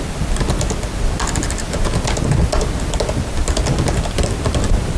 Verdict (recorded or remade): recorded